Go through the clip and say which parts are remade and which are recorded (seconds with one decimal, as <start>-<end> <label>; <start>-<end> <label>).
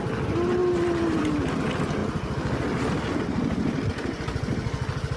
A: 0.0-5.2 recorded